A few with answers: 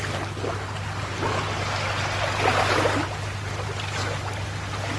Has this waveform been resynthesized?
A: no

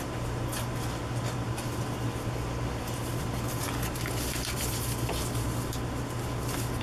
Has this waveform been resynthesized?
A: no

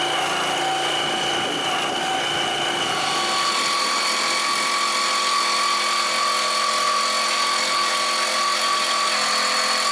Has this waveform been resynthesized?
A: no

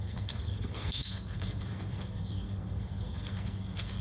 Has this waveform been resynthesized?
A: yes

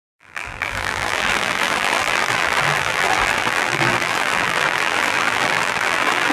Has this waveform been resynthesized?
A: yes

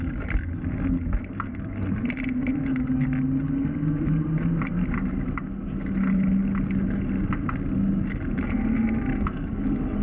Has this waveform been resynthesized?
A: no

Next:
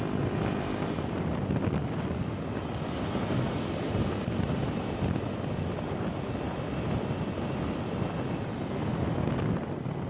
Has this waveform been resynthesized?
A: no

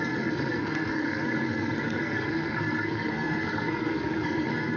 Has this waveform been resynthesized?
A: yes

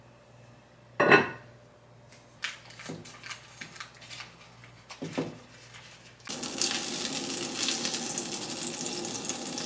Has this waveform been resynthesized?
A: no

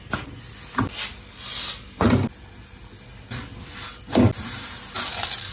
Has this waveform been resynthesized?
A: no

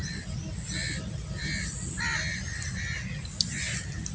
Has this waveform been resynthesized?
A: no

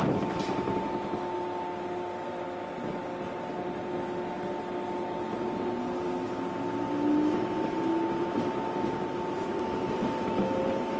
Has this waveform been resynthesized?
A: no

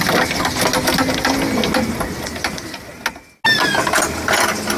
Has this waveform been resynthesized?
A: no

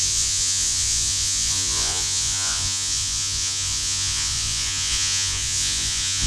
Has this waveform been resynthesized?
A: yes